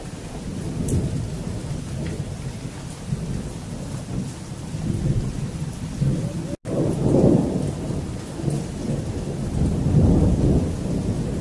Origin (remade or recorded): recorded